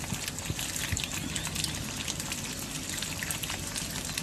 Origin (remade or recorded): recorded